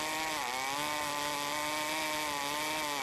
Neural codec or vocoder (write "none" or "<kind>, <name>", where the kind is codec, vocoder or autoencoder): none